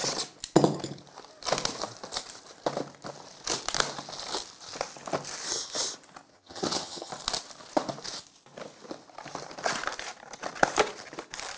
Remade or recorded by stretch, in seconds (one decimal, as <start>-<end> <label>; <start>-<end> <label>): 0.0-6.3 recorded; 6.3-7.1 remade; 7.1-11.6 recorded